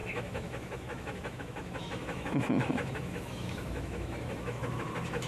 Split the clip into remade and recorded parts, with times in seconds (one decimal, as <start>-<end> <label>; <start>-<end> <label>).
0.0-5.3 remade